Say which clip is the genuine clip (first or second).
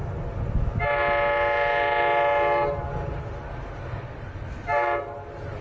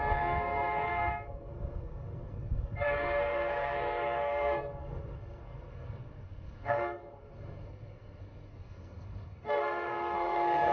first